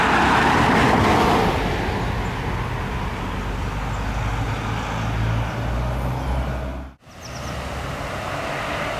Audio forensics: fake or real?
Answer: real